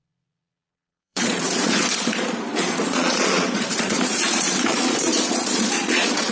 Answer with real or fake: fake